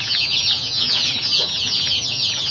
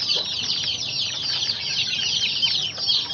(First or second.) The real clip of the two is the second